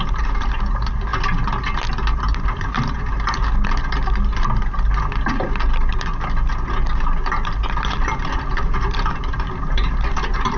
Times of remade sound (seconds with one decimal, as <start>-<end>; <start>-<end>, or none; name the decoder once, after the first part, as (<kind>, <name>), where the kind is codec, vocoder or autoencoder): 0.0-1.1 (vocoder, BigVGAN v2); 2.4-3.4; 7.7-10.6